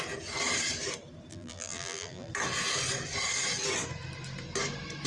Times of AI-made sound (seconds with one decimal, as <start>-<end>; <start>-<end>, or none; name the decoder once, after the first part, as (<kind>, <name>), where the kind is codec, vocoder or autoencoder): 1.3-2.3 (vocoder, BigVGAN v2)